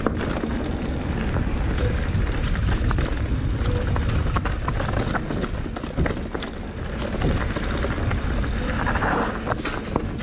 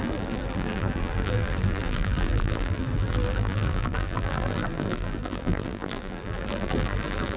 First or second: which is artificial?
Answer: second